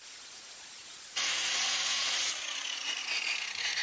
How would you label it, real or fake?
fake